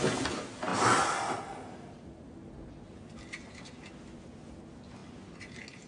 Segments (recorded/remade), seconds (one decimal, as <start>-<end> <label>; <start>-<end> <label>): 0.0-5.9 recorded